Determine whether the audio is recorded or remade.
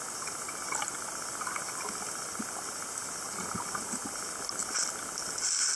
recorded